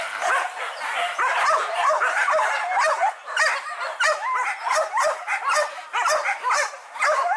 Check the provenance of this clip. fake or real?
fake